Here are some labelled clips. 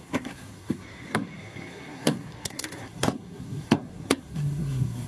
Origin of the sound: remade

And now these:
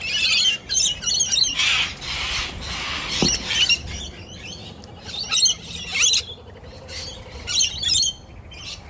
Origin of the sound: recorded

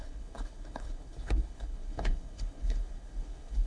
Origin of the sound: remade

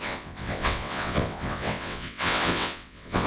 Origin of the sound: remade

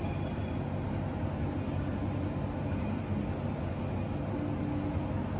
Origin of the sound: recorded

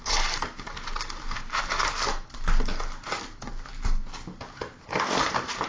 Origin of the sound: recorded